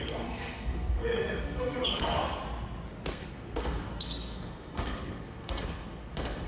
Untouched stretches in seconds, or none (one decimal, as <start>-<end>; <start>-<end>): 2.4-3.1